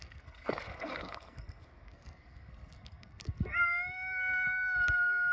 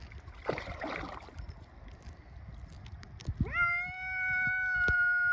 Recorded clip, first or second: second